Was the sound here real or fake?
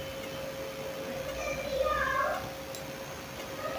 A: real